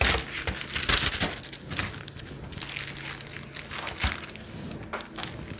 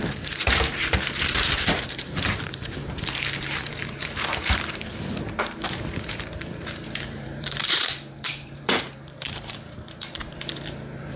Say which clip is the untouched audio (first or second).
first